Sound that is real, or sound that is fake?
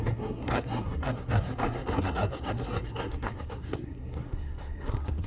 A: fake